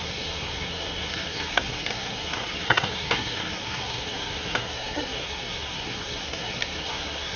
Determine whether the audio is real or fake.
fake